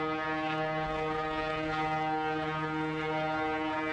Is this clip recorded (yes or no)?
yes